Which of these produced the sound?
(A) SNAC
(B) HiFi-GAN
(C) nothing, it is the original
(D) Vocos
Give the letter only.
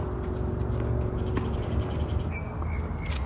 C